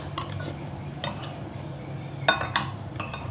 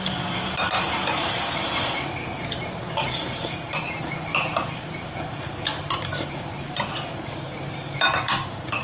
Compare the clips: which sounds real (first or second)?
first